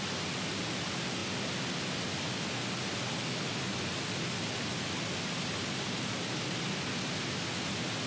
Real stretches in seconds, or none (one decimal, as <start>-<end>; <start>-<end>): 0.0-8.1